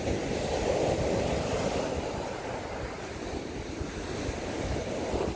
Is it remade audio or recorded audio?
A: recorded